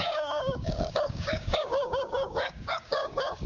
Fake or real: fake